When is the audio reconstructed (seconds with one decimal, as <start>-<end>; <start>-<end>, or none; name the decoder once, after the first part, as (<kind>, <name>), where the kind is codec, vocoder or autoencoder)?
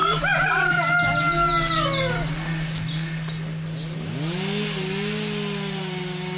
0.0-0.7 (vocoder, BigVGAN v2)